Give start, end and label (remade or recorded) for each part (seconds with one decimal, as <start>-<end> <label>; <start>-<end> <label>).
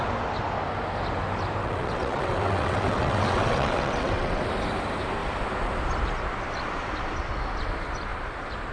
0.0-1.6 recorded; 1.6-4.4 remade; 4.4-8.7 recorded